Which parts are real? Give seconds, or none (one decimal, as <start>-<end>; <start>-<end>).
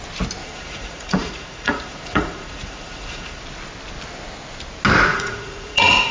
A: 0.0-0.4; 3.4-5.1